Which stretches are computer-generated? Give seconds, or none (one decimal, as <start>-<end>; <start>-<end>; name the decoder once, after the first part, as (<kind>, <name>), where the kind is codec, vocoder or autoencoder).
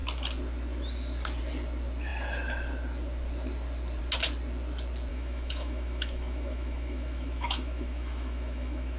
5.1-9.0 (autoencoder, DAC-VAE)